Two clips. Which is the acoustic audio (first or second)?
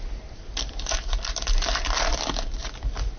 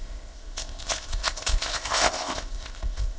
first